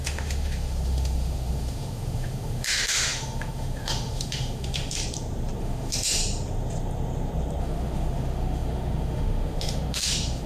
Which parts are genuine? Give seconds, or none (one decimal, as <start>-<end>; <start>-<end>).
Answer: 5.0-5.6; 6.2-7.6